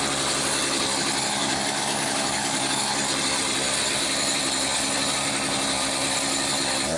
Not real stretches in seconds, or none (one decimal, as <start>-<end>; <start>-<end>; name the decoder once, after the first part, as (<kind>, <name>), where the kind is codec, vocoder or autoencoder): 1.4-2.9 (codec, DAC)